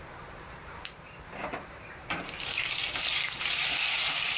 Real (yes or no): no